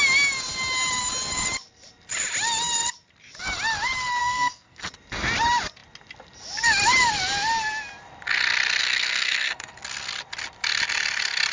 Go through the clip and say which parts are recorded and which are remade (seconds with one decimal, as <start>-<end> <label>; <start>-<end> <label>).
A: 0.0-4.2 recorded; 4.2-4.8 remade; 4.8-8.8 recorded; 8.8-9.8 remade; 9.8-11.5 recorded